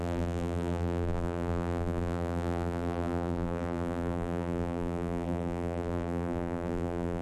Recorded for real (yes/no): no